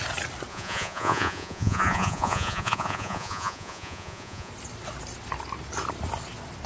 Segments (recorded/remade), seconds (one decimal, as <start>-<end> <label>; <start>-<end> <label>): 0.0-0.5 recorded; 0.5-4.5 remade; 4.5-6.7 recorded